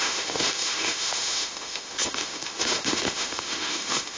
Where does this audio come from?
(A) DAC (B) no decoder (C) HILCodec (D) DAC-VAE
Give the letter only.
D